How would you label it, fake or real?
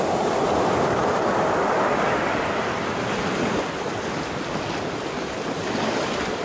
real